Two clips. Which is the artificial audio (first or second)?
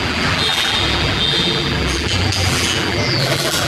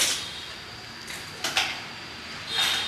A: first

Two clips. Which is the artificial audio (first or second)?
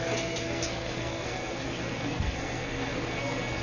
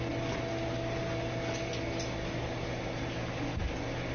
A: first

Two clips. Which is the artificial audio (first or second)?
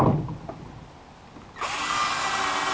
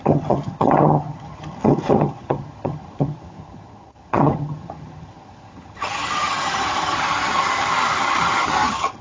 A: second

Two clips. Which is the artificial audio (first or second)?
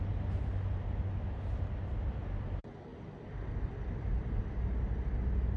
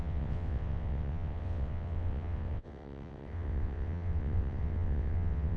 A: second